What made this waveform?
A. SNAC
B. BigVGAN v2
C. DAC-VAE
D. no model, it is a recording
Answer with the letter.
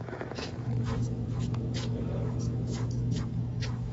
C